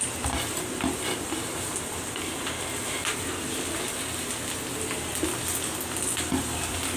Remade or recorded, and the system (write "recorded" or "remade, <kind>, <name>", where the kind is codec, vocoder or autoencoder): recorded